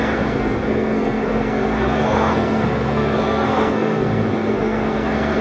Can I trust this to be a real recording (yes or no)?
no